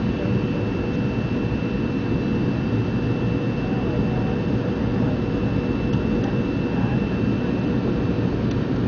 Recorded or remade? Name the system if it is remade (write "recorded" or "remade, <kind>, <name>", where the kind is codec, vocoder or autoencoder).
recorded